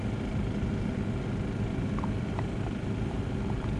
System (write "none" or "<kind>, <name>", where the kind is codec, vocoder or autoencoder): none